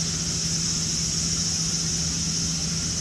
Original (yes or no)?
yes